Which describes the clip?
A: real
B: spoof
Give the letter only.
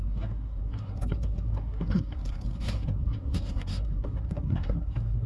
B